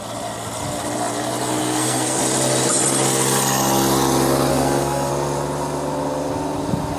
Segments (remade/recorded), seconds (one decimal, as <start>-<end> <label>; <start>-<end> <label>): 0.0-1.6 recorded; 1.6-2.2 remade; 2.2-4.5 recorded; 4.5-5.1 remade; 5.1-7.0 recorded